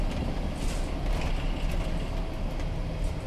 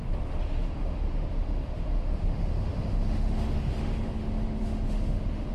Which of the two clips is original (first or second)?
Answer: first